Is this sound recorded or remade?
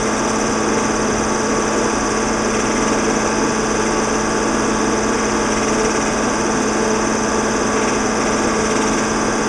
recorded